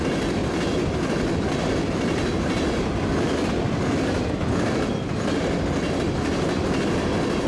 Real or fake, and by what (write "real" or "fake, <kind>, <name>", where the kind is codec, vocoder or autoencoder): real